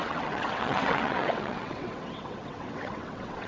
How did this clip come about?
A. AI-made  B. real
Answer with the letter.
A